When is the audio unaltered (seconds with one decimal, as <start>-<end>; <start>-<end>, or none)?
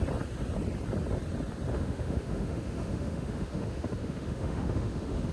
0.0-1.7